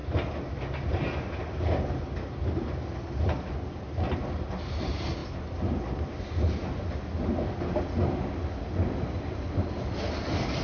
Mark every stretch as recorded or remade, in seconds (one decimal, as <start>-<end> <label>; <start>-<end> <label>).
0.0-10.6 recorded